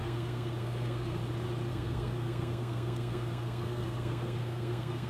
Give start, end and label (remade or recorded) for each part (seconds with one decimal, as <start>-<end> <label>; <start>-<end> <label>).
0.0-1.2 remade; 1.2-1.7 recorded; 1.7-5.1 remade